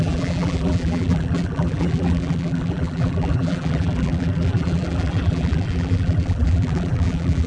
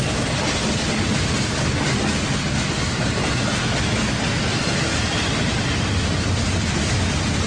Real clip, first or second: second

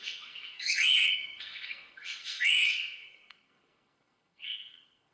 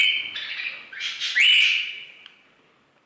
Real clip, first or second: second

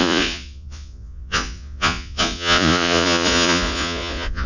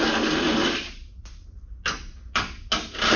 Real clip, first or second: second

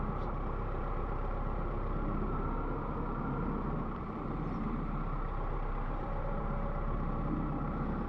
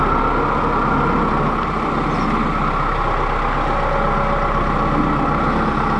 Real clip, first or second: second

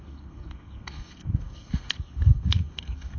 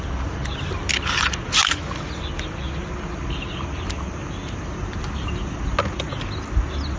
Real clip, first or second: second